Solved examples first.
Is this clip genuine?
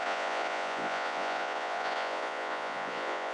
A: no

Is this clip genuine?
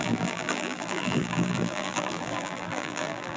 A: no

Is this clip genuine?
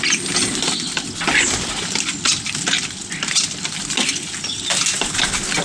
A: yes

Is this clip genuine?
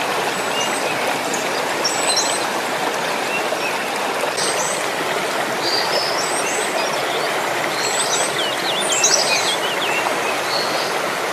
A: yes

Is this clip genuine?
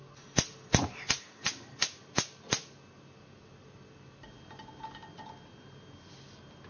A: yes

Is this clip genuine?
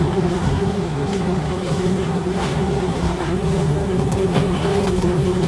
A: no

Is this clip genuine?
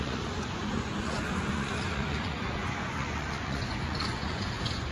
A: no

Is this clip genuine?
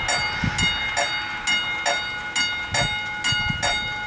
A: yes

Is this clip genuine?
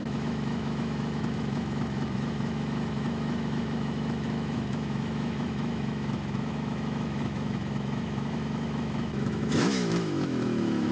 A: no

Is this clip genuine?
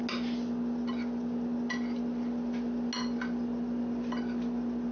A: yes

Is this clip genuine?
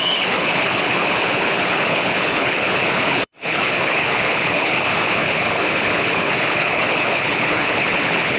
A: no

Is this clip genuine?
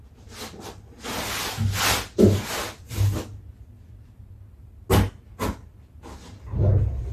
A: yes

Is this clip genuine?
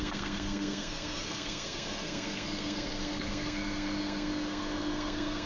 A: no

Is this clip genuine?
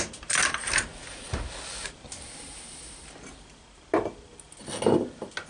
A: yes